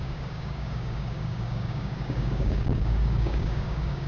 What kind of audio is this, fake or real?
fake